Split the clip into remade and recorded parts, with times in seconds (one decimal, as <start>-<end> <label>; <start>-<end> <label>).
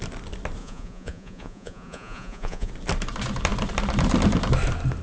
0.0-0.6 recorded; 0.6-2.7 remade; 2.7-5.0 recorded